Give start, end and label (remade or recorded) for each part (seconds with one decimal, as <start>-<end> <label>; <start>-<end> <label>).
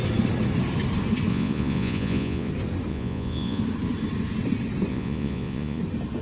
0.0-1.3 recorded; 1.3-2.5 remade; 2.5-2.9 recorded; 2.9-3.6 remade; 3.6-4.9 recorded; 4.9-5.8 remade; 5.8-6.2 recorded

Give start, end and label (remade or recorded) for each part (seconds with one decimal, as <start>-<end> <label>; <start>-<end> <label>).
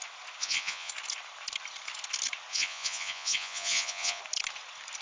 0.0-0.4 recorded; 0.4-0.9 remade; 0.9-2.5 recorded; 2.5-4.2 remade; 4.2-5.0 recorded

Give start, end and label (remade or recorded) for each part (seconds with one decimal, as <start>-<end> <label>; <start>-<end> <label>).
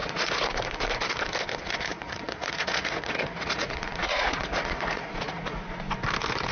0.0-0.6 remade; 0.6-1.9 recorded; 1.9-5.8 remade; 5.8-6.5 recorded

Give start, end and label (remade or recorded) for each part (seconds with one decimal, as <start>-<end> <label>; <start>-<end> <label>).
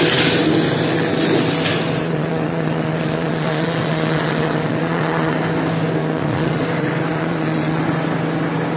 0.0-2.0 recorded; 2.0-5.4 remade; 5.4-6.0 recorded; 6.0-6.6 remade; 6.6-7.1 recorded; 7.1-7.8 remade; 7.8-8.8 recorded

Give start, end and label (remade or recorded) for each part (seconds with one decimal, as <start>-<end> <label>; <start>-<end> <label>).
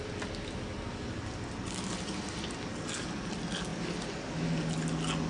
0.0-5.3 recorded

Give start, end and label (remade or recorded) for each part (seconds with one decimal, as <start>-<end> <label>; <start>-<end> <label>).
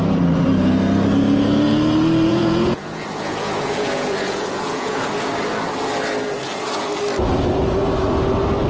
0.0-2.3 recorded; 2.3-5.2 remade; 5.2-8.7 recorded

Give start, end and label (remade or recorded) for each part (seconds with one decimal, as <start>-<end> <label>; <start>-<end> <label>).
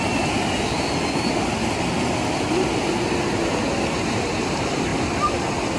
0.0-5.8 recorded